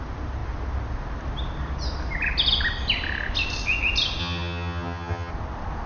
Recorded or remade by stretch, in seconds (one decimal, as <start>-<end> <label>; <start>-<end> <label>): 0.0-4.2 recorded; 4.2-5.3 remade; 5.3-5.9 recorded